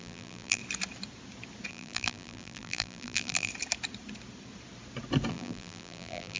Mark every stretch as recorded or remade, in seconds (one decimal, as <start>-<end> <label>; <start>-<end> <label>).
0.0-0.6 remade; 0.6-1.7 recorded; 1.7-3.5 remade; 3.5-5.3 recorded; 5.3-6.4 remade